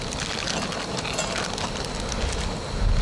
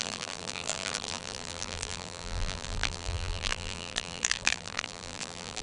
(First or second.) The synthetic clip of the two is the second